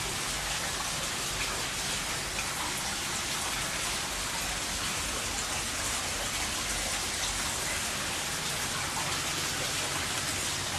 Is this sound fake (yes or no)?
no